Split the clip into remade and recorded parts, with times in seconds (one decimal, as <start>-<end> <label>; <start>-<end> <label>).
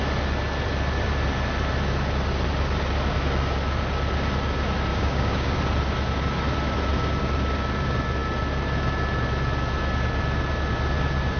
0.0-4.9 recorded; 4.9-5.6 remade; 5.6-11.4 recorded